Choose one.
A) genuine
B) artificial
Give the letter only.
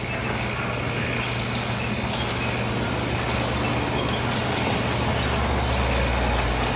A